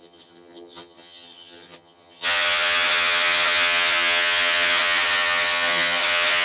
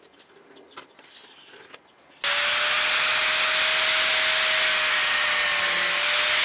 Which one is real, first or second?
second